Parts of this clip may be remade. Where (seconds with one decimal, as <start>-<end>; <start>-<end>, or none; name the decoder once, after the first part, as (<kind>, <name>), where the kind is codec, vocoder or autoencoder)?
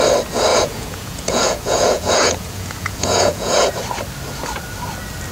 0.5-3.7 (vocoder, Vocos)